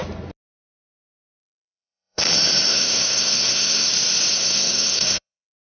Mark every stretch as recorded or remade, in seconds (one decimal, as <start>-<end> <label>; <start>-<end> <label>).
0.0-1.3 recorded; 1.3-2.2 remade; 2.2-2.7 recorded; 2.7-3.9 remade; 3.9-4.3 recorded; 4.3-5.7 remade